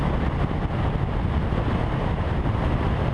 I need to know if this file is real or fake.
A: real